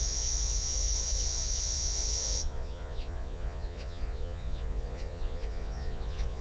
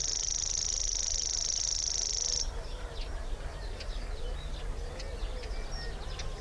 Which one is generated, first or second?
first